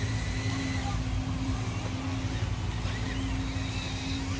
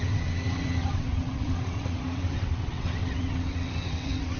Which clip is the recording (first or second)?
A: first